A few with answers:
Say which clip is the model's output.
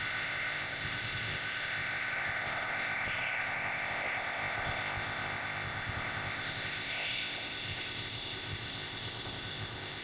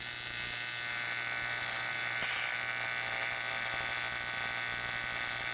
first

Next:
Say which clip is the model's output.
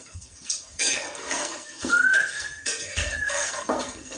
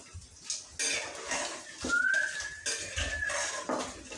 first